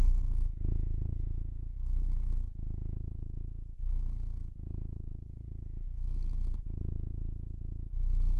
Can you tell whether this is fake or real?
real